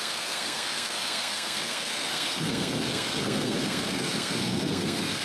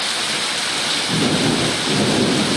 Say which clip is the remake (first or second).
first